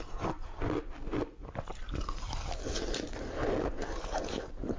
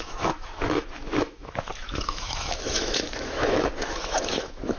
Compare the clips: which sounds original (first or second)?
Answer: first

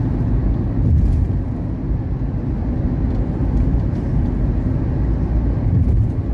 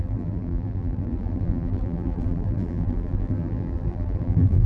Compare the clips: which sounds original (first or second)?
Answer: first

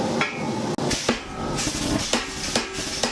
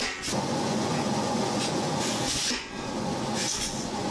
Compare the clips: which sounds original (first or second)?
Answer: first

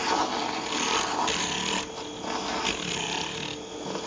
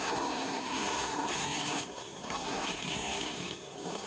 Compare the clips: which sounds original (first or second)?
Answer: first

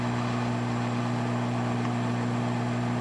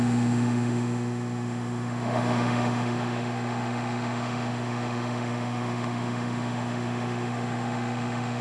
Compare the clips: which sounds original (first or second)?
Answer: first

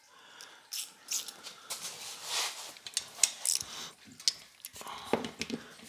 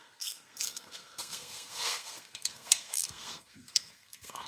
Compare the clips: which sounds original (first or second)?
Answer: first